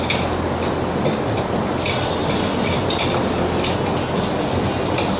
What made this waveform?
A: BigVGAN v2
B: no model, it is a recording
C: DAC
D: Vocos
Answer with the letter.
B